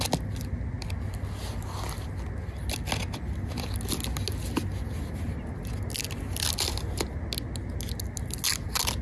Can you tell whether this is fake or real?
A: real